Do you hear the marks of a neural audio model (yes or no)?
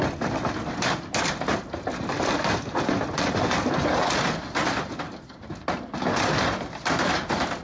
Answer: no